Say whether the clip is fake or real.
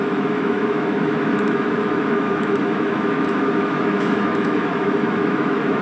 fake